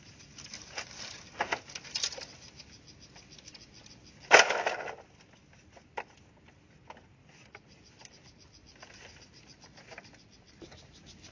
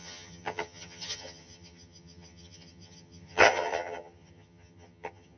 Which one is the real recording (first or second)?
first